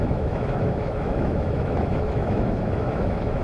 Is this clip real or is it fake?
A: fake